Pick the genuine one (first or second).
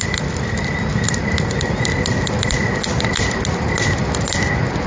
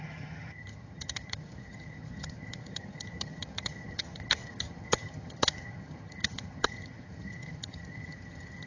first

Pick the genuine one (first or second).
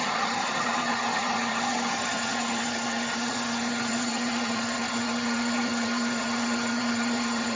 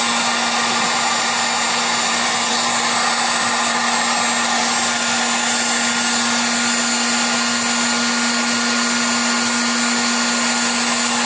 second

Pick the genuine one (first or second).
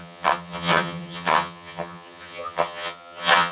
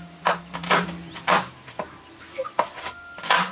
second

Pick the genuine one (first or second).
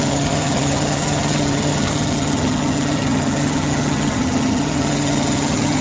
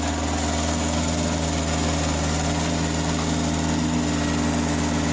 second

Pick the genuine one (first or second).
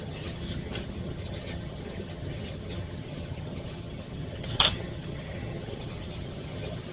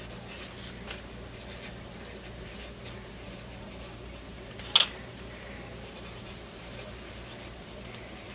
second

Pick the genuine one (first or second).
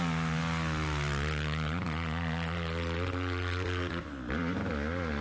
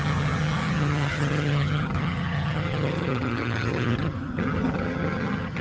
first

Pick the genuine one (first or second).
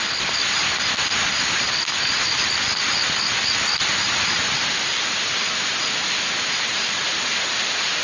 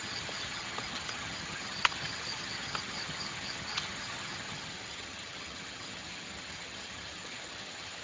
first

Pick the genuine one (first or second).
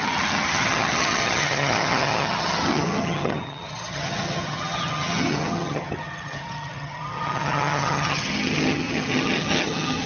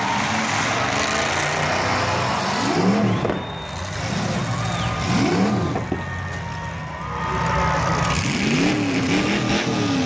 second